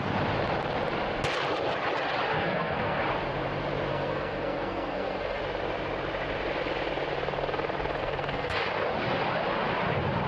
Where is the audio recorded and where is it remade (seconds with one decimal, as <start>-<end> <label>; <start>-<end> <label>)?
0.0-2.3 recorded; 2.3-3.0 remade; 3.0-3.9 recorded; 3.9-5.4 remade; 5.4-8.0 recorded; 8.0-8.6 remade; 8.6-10.3 recorded